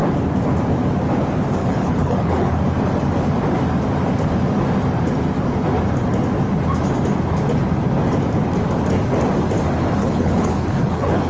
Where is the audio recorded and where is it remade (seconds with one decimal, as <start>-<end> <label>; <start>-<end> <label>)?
0.0-1.6 recorded; 1.6-2.6 remade; 2.6-10.0 recorded; 10.0-11.3 remade